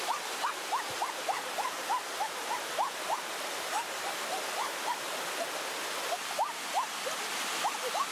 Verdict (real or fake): real